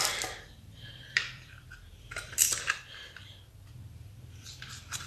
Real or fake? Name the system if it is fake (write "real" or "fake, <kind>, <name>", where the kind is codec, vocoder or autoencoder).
fake, vocoder, BigVGAN v2